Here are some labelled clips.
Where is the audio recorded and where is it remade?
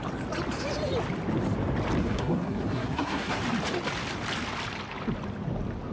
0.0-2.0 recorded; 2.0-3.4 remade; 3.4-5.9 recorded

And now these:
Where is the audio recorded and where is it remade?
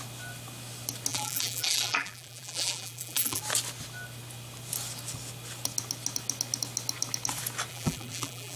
0.0-1.1 recorded; 1.1-3.4 remade; 3.4-7.7 recorded; 7.7-8.6 remade